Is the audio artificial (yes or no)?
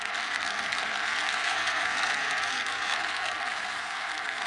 yes